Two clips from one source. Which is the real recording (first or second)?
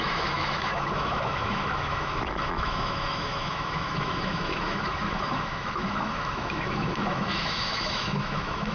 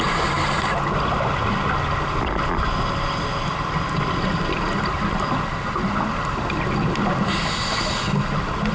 second